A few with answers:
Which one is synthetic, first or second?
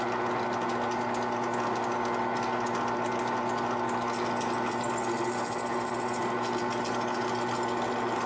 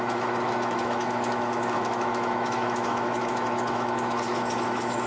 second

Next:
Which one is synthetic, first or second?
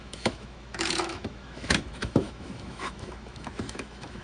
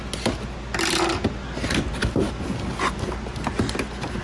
first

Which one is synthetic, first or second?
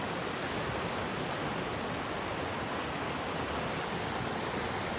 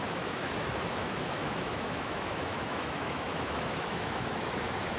second